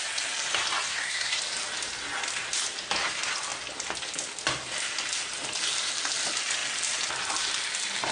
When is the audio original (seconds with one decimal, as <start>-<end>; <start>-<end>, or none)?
0.0-0.9; 1.4-8.1